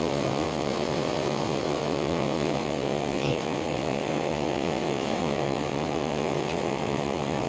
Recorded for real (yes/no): no